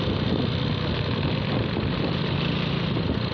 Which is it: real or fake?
real